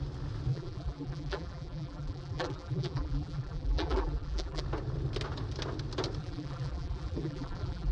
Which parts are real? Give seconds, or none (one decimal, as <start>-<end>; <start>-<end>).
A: 0.0-0.5; 4.6-6.2